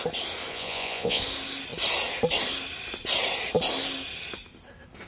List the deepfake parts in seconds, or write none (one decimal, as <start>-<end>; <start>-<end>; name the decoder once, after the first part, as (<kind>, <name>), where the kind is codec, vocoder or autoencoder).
0.5-1.2 (vocoder, Vocos)